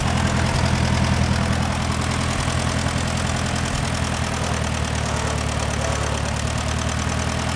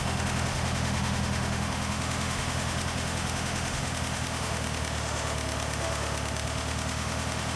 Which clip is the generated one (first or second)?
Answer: second